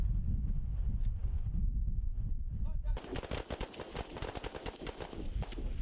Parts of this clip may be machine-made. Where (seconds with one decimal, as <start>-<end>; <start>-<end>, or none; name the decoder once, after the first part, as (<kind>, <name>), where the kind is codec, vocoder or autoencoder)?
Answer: none